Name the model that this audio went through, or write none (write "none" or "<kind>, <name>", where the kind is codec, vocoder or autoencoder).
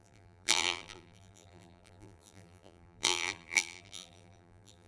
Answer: vocoder, BigVGAN v2